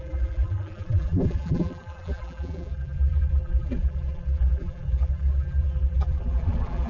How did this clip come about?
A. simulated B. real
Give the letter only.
A